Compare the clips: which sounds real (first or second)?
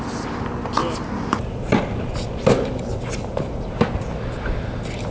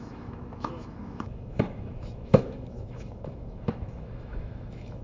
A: first